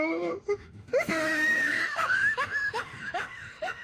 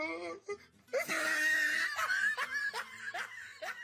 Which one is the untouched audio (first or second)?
second